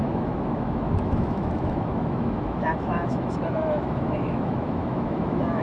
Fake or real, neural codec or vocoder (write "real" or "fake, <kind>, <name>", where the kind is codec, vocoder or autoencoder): fake, autoencoder, DAC-VAE